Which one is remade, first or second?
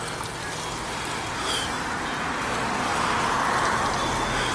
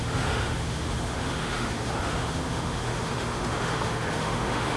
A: second